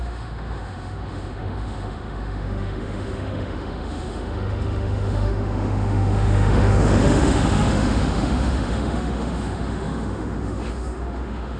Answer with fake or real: fake